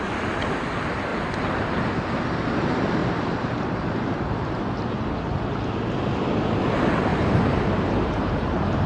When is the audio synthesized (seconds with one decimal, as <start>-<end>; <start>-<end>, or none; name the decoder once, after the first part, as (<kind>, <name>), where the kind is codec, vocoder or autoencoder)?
3.0-4.6 (vocoder, BigVGAN v2); 7.1-8.9